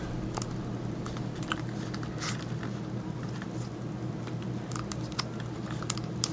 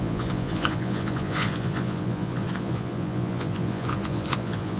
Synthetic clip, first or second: second